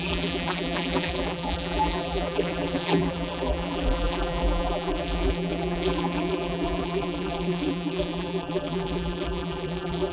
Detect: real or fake fake